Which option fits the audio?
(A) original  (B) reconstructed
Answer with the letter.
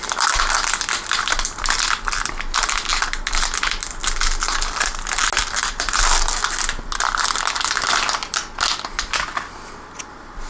A